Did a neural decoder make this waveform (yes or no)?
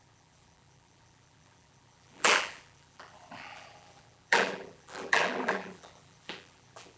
yes